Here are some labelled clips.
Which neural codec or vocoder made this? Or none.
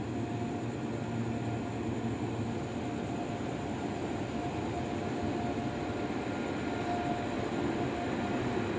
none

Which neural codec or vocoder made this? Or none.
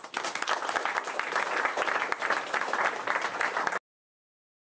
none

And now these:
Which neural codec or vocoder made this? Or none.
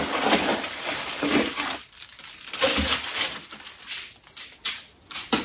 none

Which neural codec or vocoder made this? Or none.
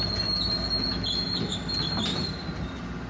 none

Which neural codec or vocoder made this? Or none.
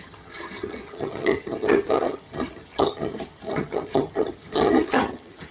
vocoder, HiFi-GAN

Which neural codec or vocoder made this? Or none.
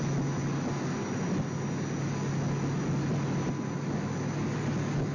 none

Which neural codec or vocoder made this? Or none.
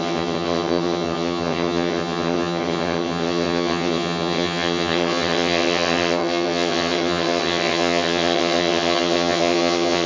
vocoder, HiFi-GAN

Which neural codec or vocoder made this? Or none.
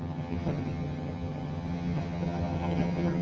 vocoder, HiFi-GAN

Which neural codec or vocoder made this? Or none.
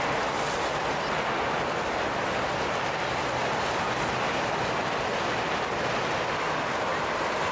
none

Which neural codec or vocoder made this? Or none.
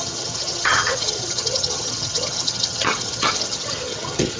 vocoder, HiFi-GAN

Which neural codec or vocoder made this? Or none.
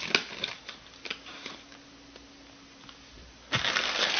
none